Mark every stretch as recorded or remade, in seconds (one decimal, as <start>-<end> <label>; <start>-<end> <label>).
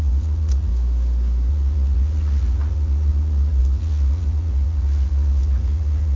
0.0-0.7 remade; 0.7-1.5 recorded; 1.5-6.2 remade